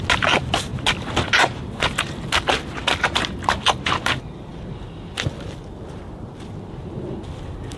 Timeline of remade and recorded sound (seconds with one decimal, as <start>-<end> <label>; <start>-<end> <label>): 0.0-7.8 recorded